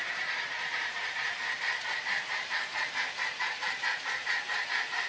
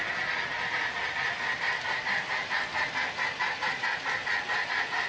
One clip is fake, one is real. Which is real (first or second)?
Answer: second